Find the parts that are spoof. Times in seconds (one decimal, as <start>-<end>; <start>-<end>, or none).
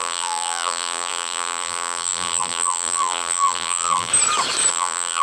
0.0-4.1; 4.7-5.2